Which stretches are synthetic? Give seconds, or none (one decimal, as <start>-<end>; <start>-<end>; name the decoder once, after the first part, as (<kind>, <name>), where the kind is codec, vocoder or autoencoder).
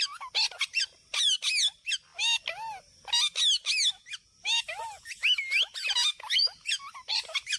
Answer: 0.7-1.4 (vocoder, BigVGAN v2); 6.4-7.6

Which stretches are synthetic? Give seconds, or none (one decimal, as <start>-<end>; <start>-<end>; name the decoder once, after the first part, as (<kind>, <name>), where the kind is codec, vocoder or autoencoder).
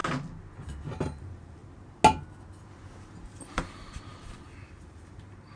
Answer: 1.0-1.6 (vocoder, BigVGAN v2); 3.0-5.6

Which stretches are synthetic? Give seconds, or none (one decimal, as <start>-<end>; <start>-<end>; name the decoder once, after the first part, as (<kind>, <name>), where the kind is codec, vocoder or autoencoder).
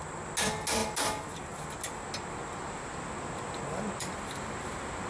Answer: none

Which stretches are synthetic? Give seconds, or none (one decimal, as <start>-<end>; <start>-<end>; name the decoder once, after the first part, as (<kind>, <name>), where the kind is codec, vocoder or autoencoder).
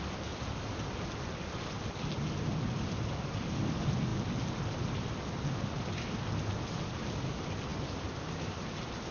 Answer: none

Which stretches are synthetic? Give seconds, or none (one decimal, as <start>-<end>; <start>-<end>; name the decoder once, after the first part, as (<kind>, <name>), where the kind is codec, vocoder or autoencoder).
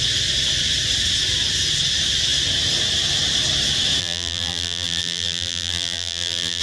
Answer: 4.0-6.6 (vocoder, BigVGAN v2)